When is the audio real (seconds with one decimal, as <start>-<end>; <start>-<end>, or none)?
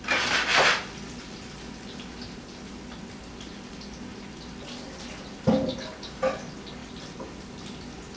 0.0-8.2